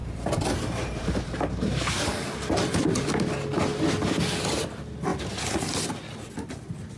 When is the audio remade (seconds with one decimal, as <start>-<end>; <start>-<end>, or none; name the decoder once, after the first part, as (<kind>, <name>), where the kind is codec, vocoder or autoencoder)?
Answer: 0.0-3.1 (vocoder, BigVGAN v2)